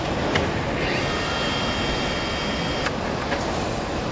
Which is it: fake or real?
real